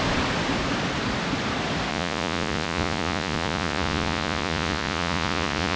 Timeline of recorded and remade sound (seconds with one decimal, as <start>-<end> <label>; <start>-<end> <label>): 0.0-1.9 recorded; 1.9-5.8 remade